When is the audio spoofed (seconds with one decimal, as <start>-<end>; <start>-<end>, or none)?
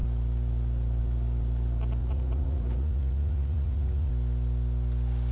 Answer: 2.0-4.1